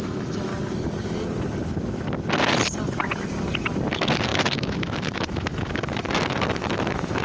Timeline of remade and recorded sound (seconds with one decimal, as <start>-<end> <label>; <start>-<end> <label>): 0.0-0.5 remade; 0.5-3.9 recorded; 3.9-7.2 remade